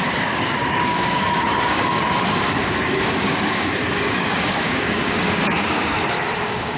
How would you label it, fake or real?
fake